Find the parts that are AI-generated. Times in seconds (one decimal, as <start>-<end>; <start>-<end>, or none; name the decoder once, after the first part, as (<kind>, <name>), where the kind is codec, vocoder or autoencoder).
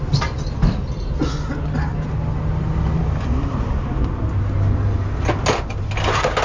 none